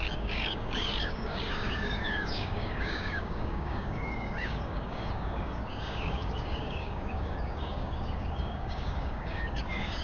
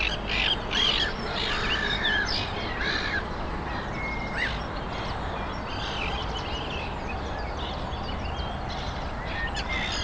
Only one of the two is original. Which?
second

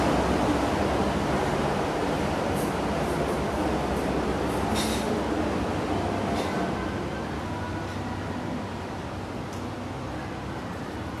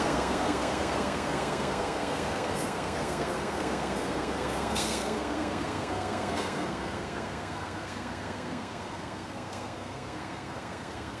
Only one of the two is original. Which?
first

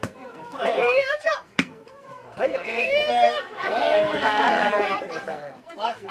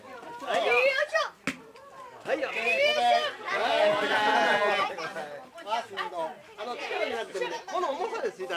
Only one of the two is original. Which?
second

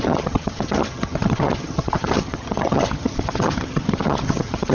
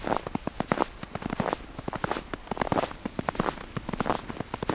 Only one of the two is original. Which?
second